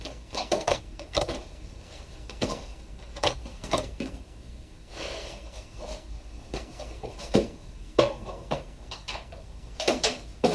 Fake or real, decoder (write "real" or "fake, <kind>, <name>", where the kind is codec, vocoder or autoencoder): fake, codec, SNAC